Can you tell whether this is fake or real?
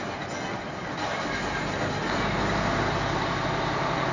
real